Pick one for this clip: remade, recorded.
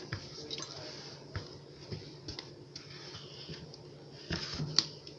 recorded